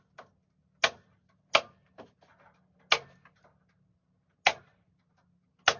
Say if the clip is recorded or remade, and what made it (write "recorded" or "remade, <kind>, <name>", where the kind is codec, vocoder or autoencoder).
recorded